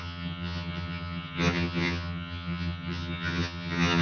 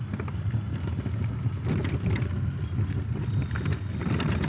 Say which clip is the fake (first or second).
first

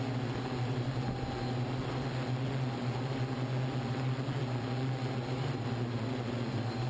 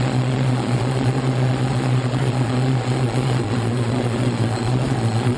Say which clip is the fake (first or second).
second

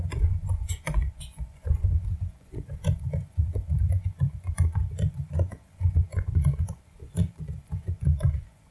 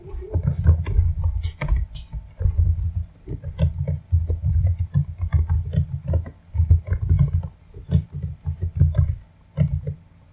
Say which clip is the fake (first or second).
first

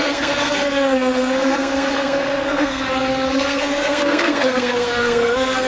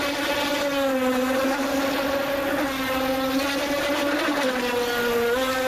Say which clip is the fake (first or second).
first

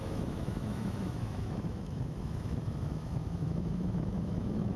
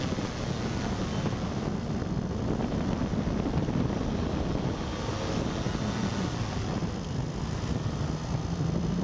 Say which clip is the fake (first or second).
first